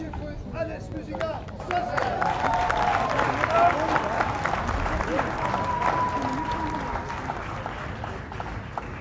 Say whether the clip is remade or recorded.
recorded